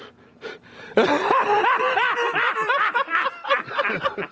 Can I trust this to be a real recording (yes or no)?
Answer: no